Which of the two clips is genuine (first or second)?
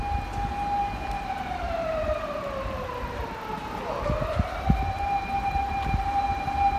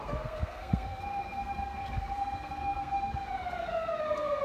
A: first